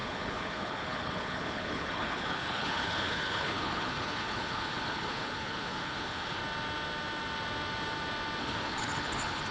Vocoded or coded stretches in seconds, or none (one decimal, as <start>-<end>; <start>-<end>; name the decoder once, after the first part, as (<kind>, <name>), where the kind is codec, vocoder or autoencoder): 0.0-6.4 (codec, HILCodec); 8.4-9.5

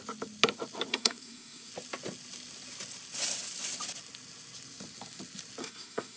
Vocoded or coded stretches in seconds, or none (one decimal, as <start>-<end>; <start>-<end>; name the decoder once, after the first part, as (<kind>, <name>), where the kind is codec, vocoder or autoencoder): 0.9-1.7 (codec, SNAC); 5.6-6.2